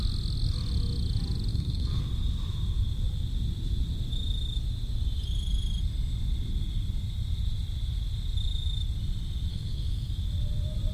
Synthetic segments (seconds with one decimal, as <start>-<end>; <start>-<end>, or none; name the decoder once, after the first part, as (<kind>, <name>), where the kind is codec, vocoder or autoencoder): 1.5-2.0 (codec, SNAC); 9.5-10.1